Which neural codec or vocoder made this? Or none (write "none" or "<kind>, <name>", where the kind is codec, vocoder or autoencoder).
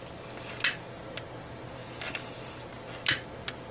none